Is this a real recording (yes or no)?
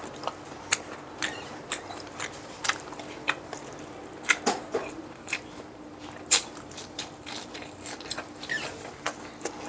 no